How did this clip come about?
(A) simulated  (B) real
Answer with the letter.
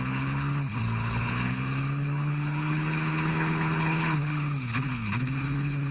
A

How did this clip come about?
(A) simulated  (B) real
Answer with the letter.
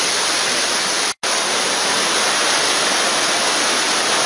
B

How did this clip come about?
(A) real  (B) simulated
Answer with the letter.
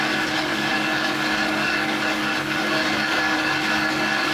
B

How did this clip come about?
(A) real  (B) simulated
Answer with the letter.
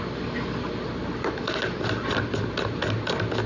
A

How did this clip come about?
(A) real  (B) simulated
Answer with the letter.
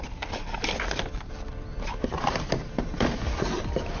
A